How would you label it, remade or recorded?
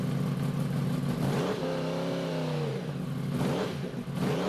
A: recorded